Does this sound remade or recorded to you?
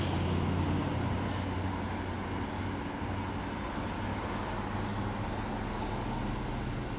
recorded